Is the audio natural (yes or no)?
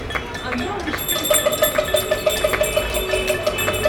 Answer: yes